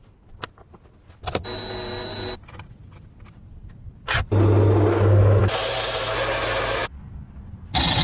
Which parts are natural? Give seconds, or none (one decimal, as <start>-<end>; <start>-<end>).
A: 0.0-8.0

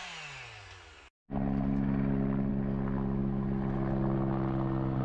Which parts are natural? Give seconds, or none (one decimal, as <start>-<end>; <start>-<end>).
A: 0.0-5.0

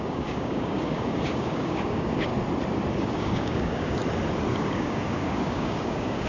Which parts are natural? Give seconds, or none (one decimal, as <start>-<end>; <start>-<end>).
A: 2.3-2.9; 4.0-4.5

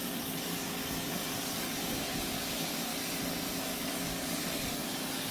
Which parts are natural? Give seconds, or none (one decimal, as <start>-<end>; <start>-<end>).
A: 0.8-1.3; 2.9-3.6

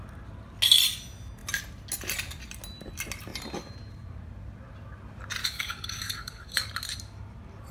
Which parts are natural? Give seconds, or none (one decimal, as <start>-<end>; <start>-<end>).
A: 0.0-5.4; 6.7-7.7